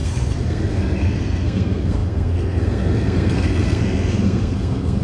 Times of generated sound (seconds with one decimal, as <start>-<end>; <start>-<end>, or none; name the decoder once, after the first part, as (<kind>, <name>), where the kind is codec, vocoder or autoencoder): 0.0-5.0 (codec, SNAC)